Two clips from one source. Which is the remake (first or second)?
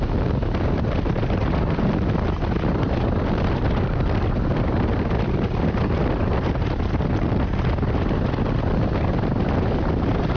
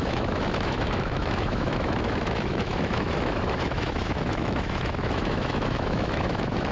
second